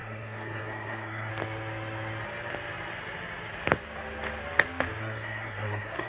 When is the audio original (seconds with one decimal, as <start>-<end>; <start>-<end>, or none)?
1.3-5.0